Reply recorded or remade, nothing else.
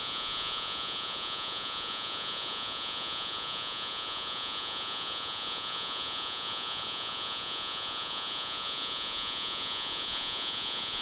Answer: remade